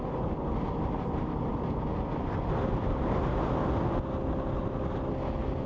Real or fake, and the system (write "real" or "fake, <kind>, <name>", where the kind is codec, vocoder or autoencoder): real